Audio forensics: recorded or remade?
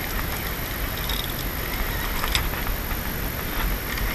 recorded